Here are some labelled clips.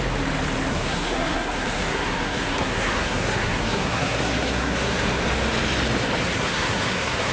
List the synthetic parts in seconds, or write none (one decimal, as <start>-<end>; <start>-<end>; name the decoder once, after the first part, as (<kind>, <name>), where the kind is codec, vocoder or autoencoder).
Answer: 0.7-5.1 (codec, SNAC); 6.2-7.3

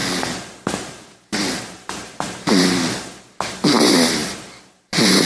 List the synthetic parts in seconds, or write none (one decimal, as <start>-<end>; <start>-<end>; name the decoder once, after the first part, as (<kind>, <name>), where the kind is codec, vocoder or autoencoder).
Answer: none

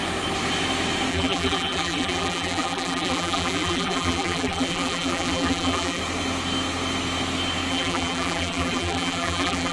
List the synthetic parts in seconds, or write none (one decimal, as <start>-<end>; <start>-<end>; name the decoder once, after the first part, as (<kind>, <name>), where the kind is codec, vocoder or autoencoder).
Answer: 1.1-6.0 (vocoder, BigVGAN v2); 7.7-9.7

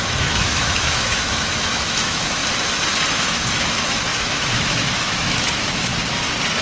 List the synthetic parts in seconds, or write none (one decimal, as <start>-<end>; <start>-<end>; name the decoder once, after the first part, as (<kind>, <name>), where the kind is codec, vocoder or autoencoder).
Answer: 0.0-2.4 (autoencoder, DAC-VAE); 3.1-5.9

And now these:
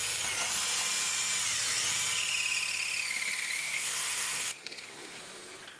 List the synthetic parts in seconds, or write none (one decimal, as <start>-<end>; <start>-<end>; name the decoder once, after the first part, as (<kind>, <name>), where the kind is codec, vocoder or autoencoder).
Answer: 3.6-5.2 (codec, SNAC)

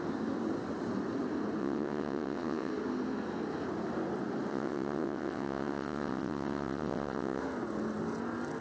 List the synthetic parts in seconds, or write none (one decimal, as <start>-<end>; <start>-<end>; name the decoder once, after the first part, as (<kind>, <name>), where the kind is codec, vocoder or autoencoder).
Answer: 1.6-2.7 (vocoder, WaveNeXt); 4.5-7.4